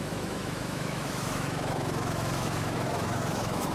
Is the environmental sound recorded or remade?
remade